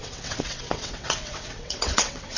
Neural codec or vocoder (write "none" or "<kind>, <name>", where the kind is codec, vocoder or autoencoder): vocoder, WaveNeXt